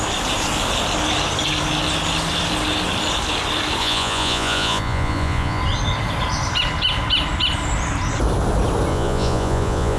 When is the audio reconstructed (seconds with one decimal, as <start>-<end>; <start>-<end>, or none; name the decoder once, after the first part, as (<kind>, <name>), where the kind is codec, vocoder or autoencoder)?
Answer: 3.8-5.6 (vocoder, Vocos); 8.9-10.0